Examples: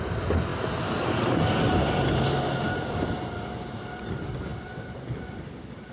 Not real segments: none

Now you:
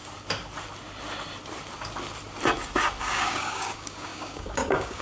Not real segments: 3.0-5.0 (codec, DAC)

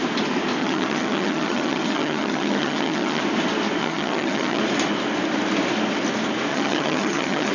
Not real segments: 0.6-3.2 (vocoder, HiFi-GAN); 3.8-4.6; 6.5-7.5